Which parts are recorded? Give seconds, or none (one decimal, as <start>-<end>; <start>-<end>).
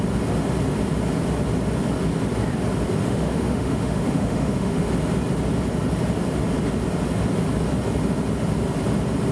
0.0-3.0; 4.9-9.3